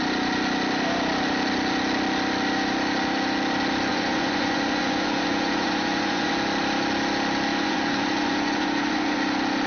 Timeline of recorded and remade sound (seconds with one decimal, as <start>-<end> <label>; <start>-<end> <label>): 0.0-3.9 recorded; 3.9-6.3 remade; 6.3-7.5 recorded; 7.5-9.2 remade; 9.2-9.7 recorded